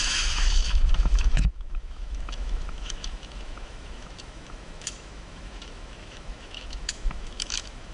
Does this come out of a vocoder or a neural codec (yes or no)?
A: yes